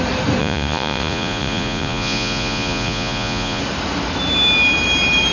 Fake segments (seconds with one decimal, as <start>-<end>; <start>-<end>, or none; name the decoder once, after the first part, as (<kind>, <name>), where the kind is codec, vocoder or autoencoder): 0.4-3.6 (vocoder, Vocos)